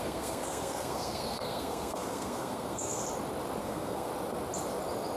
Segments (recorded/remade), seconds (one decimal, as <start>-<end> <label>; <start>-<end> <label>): 0.0-3.0 remade; 3.0-3.6 recorded; 3.6-4.1 remade; 4.1-5.2 recorded